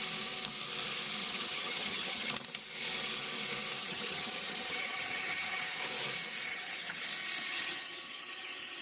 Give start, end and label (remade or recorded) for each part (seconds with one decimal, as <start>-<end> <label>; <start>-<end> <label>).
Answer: 0.0-1.2 recorded; 1.2-2.3 remade; 2.3-3.8 recorded; 3.8-5.8 remade; 5.8-6.5 recorded; 6.5-7.1 remade; 7.1-7.5 recorded; 7.5-8.8 remade